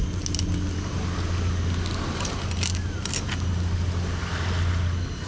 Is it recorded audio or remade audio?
recorded